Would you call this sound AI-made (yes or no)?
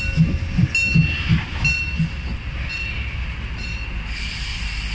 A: no